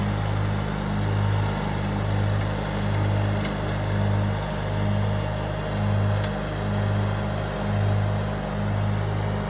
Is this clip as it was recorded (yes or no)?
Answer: yes